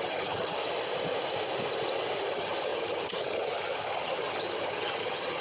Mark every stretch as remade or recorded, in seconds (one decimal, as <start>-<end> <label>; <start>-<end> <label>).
0.0-0.6 remade; 0.6-2.3 recorded; 2.3-5.4 remade